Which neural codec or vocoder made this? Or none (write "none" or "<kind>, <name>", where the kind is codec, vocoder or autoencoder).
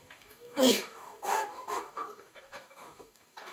codec, DAC